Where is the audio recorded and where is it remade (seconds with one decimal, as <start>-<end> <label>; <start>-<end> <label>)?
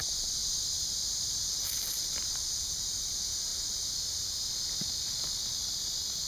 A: 0.0-0.4 recorded; 0.4-2.8 remade; 2.8-6.3 recorded